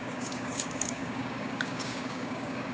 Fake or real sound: fake